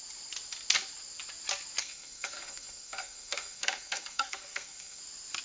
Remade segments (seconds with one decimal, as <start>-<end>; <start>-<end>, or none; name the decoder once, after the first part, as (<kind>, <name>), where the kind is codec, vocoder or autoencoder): 1.8-5.0 (codec, SNAC)